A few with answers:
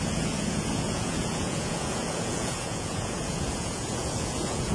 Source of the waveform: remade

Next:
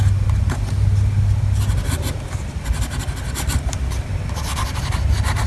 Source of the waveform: recorded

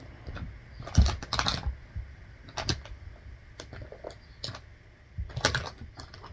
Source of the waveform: recorded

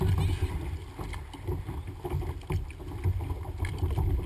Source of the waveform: recorded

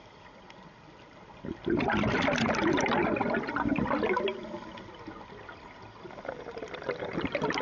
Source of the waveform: recorded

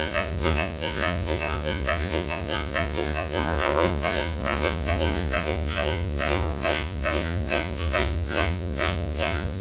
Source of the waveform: remade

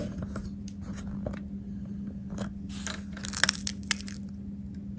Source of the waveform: recorded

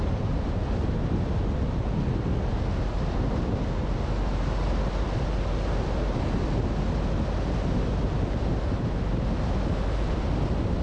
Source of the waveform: recorded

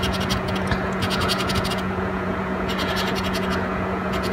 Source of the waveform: remade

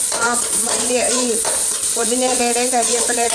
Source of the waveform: remade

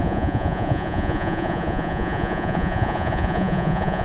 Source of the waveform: remade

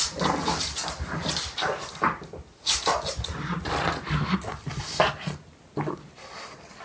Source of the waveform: recorded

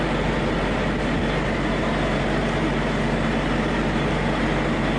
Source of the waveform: recorded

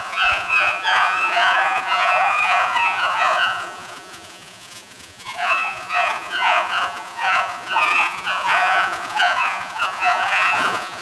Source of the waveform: remade